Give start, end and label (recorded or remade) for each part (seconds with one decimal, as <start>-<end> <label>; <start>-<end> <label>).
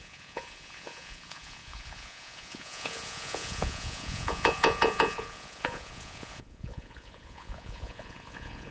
0.0-8.7 remade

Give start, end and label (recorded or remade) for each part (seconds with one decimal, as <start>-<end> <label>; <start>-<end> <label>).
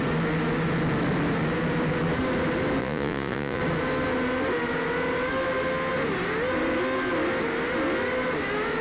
0.0-2.8 recorded; 2.8-3.6 remade; 3.6-8.8 recorded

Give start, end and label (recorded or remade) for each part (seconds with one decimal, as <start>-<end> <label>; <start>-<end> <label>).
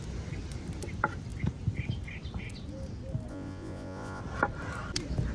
0.0-3.3 recorded; 3.3-4.2 remade; 4.2-5.3 recorded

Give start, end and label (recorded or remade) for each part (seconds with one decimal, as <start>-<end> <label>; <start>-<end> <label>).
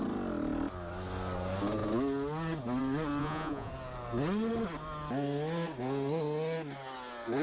0.0-3.2 recorded; 3.2-3.7 remade; 3.7-7.4 recorded